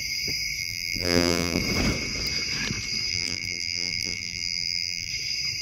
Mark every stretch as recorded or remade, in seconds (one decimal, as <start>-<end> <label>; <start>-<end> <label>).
0.0-0.6 recorded; 0.6-1.6 remade; 1.6-3.1 recorded; 3.1-5.1 remade; 5.1-5.6 recorded